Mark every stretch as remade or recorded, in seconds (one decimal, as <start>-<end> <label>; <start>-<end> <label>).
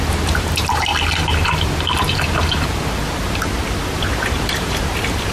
0.0-0.9 remade; 0.9-4.1 recorded; 4.1-5.3 remade